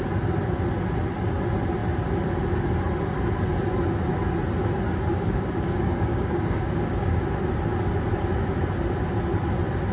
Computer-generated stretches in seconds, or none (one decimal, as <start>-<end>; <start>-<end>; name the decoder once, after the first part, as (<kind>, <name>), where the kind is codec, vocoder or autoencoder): 5.1-7.2 (codec, DAC)